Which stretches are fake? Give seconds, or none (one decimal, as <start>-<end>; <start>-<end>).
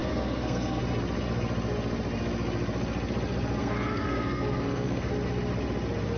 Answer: 0.0-0.8; 3.6-5.1